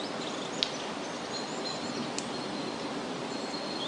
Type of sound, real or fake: real